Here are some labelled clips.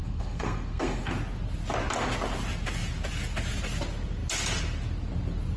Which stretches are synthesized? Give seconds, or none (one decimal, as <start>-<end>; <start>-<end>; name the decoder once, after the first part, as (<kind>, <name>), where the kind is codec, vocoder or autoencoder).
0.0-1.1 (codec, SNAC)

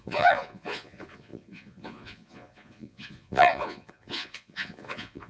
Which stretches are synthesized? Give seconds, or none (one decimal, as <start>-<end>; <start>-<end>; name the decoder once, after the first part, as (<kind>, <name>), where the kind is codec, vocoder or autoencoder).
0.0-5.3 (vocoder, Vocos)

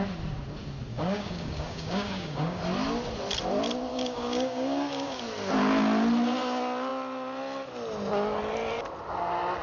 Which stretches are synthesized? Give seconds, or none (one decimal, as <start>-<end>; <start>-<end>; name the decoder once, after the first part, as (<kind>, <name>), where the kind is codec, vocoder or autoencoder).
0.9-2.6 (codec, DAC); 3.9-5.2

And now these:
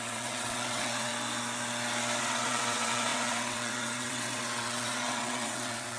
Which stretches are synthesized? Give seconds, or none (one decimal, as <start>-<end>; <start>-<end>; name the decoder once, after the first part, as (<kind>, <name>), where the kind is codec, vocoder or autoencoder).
0.0-1.1 (vocoder, WaveNeXt); 2.2-6.0

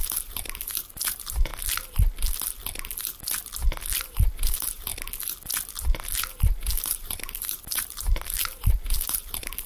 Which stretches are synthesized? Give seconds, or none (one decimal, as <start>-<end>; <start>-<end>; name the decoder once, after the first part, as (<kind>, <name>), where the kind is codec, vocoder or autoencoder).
0.0-1.5 (vocoder, BigVGAN v2); 4.0-4.9; 6.4-9.7